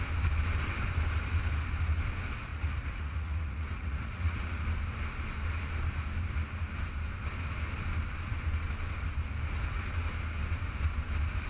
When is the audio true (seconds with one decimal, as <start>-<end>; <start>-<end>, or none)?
0.0-2.5; 4.6-11.5